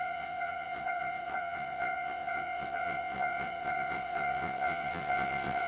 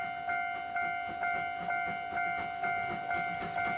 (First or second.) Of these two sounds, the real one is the second